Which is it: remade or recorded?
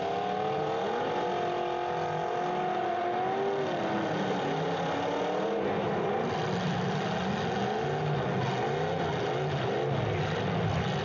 recorded